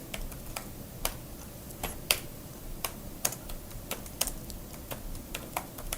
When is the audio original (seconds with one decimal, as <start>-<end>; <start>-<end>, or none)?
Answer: 0.0-0.6; 4.2-6.0